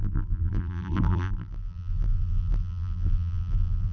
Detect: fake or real fake